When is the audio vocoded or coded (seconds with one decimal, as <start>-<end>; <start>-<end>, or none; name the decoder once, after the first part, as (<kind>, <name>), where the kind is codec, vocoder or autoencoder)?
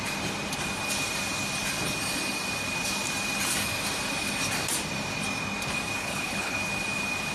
6.0-6.6 (codec, HILCodec)